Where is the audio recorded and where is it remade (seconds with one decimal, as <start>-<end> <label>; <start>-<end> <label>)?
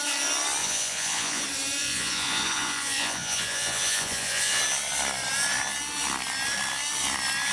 0.0-0.6 recorded; 0.6-1.4 remade; 1.4-1.8 recorded; 1.8-4.6 remade; 4.6-7.5 recorded